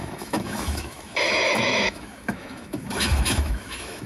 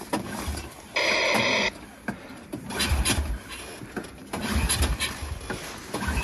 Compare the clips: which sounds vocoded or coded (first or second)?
first